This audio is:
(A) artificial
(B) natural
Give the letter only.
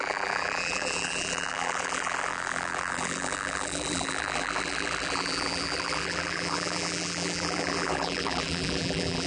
A